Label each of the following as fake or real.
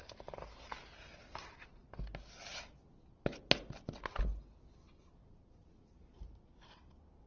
real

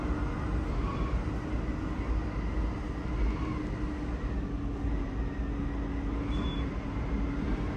real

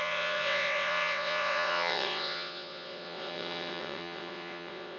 fake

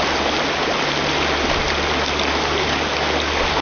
real